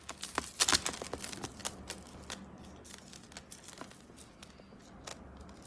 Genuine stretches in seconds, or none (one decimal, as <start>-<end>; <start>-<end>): 0.0-5.7